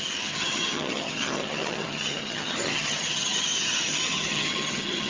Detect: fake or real fake